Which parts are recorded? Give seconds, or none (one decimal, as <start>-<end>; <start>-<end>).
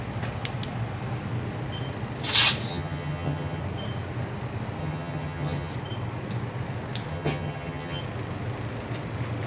0.0-2.7; 3.6-4.8; 5.7-7.1; 8.0-9.5